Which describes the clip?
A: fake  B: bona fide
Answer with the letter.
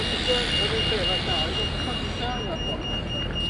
B